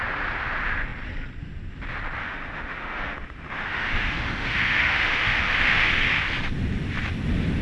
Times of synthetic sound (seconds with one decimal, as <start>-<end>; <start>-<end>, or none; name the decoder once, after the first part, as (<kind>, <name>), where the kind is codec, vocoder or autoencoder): 2.2-6.2 (autoencoder, DAC-VAE)